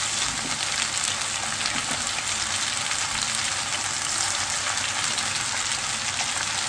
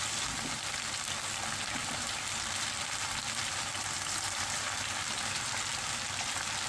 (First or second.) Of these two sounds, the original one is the first